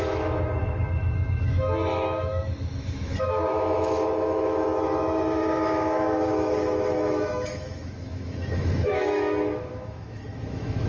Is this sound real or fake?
fake